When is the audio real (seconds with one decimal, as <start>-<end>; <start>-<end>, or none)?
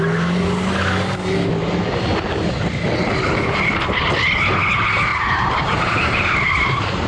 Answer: 0.0-3.2; 4.1-5.1